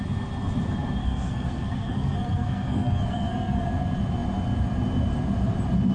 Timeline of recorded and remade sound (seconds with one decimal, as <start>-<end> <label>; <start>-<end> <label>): 0.0-1.0 recorded; 1.0-3.7 remade; 3.7-5.9 recorded